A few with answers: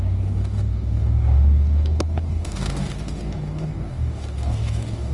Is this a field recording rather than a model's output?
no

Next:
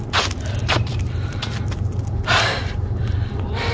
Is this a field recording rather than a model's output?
no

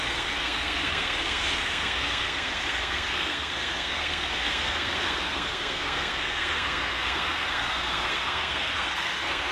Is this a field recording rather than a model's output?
no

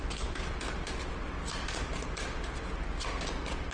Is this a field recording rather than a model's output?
yes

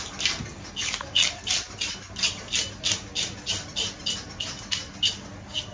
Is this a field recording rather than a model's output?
yes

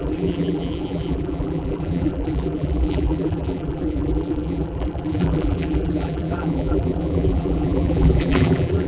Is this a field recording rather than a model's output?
no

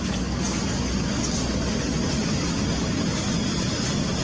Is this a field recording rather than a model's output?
yes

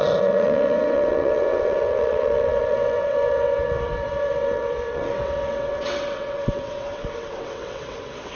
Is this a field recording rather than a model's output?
no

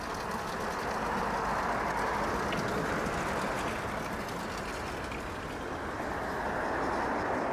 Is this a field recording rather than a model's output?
yes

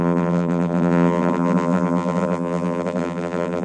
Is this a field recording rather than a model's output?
no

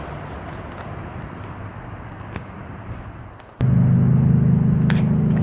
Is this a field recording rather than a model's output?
yes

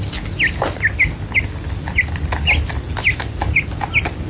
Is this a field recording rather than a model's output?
yes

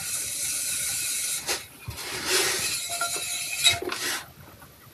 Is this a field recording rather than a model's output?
yes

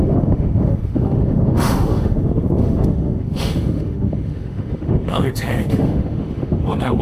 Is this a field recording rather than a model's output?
no